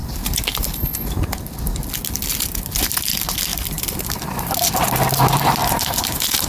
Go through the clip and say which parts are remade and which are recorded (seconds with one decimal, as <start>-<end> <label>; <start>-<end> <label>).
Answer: 0.0-0.7 remade; 0.7-3.5 recorded; 3.5-4.3 remade; 4.3-5.6 recorded; 5.6-6.5 remade